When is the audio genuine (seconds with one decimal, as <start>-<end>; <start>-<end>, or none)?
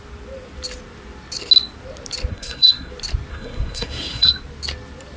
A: 0.0-2.3; 2.9-3.3; 4.3-5.2